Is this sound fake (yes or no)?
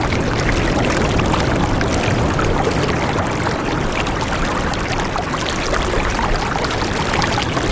no